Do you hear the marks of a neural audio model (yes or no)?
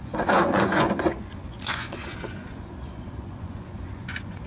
yes